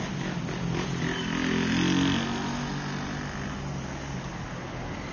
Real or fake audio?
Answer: real